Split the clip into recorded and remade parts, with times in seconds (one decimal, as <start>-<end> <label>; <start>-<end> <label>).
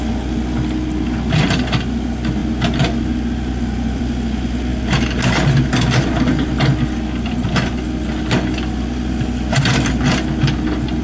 0.0-11.0 recorded